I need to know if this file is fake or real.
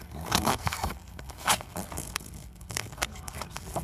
fake